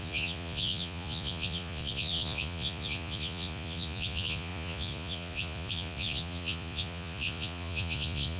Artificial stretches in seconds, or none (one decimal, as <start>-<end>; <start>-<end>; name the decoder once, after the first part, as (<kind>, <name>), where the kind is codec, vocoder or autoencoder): 0.0-8.4 (vocoder, Vocos)